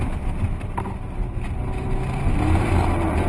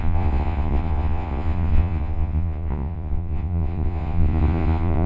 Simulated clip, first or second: second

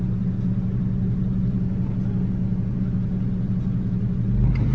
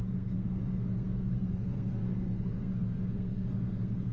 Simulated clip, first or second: second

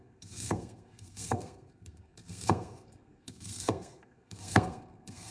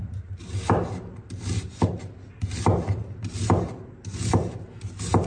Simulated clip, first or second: first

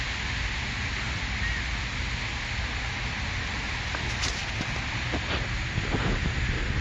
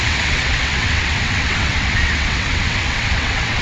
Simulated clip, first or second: second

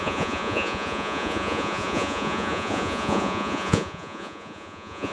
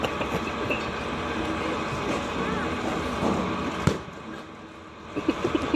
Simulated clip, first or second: first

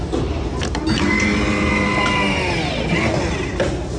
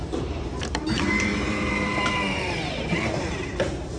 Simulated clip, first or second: second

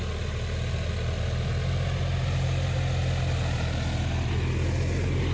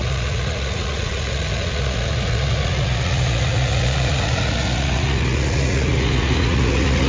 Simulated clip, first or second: second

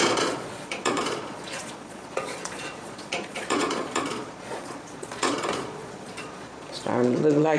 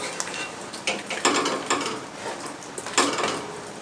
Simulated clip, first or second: first